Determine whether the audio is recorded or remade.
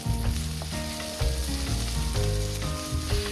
recorded